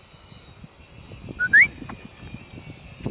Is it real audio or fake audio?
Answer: real